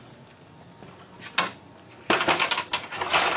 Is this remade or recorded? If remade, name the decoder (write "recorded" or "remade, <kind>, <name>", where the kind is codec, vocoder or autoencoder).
recorded